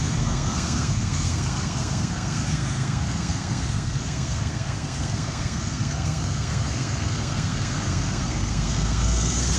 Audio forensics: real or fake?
fake